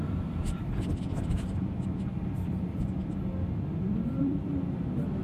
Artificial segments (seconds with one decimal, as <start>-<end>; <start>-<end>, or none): 0.0-3.0; 3.5-4.5